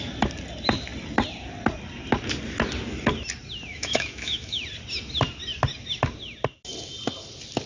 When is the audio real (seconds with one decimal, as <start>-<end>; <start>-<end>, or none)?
0.0-3.7; 4.6-7.7